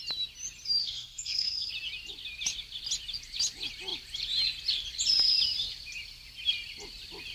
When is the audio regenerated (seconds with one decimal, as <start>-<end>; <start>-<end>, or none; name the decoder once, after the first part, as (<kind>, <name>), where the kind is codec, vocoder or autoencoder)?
0.8-1.7 (codec, SNAC)